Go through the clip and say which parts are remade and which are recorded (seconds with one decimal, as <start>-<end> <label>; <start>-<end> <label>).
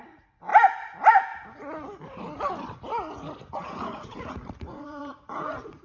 0.0-0.5 remade; 0.5-3.5 recorded; 3.5-5.8 remade